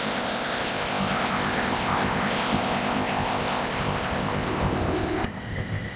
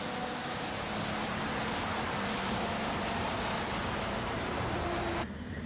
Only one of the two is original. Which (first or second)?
second